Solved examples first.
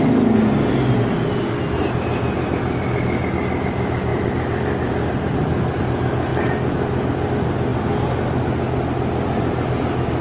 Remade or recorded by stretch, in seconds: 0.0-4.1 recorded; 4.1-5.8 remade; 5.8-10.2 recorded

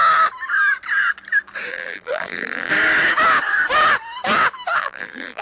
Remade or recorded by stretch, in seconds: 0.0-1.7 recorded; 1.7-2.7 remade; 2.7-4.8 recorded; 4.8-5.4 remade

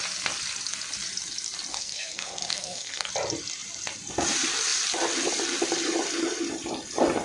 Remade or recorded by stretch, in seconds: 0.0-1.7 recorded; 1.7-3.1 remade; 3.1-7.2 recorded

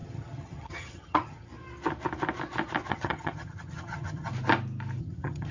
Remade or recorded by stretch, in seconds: 0.0-1.5 remade; 1.5-2.9 recorded; 2.9-4.3 remade; 4.3-5.0 recorded; 5.0-5.5 remade

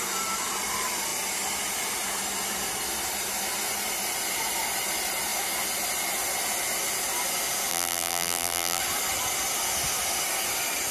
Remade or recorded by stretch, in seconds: 0.0-7.7 recorded; 7.7-8.8 remade; 8.8-10.9 recorded

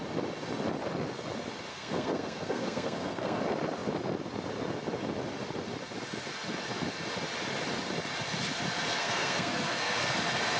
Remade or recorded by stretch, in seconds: 0.0-1.7 recorded; 1.7-3.4 remade; 3.4-9.0 recorded; 9.0-10.1 remade; 10.1-10.6 recorded